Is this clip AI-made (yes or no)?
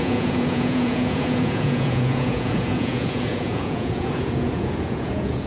yes